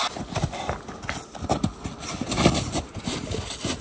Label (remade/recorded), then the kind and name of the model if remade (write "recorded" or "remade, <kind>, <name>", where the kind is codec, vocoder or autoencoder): recorded